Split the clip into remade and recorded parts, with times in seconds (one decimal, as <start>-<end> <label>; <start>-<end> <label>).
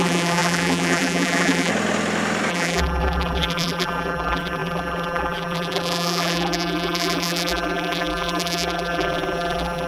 0.0-1.7 remade; 1.7-2.5 recorded; 2.5-9.9 remade